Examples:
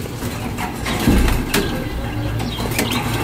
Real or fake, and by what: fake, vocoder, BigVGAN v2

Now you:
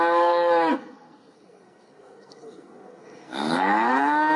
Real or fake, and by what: fake, codec, SNAC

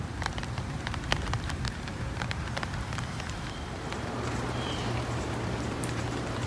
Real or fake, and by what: fake, vocoder, BigVGAN v2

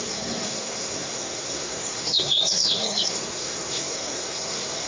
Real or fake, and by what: fake, codec, SNAC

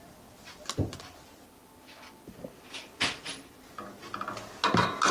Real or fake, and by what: real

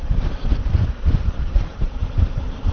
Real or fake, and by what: fake, vocoder, BigVGAN v2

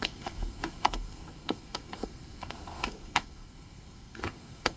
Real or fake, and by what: fake, codec, SNAC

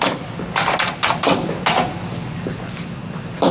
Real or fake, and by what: real